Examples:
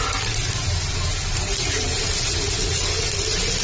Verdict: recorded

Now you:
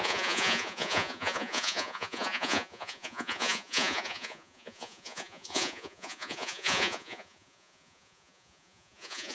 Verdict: remade